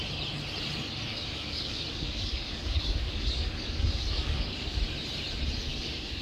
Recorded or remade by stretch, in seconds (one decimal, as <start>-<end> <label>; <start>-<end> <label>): 0.0-1.1 recorded; 1.1-4.8 remade; 4.8-5.7 recorded; 5.7-6.2 remade